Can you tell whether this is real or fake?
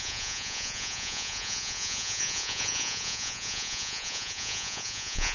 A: fake